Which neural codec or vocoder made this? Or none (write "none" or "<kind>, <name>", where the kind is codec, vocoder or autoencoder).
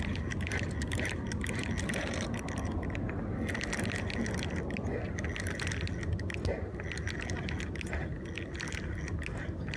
none